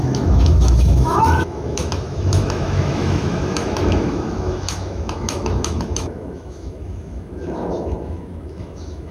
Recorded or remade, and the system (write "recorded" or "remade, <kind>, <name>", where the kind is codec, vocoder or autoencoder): remade, autoencoder, DAC-VAE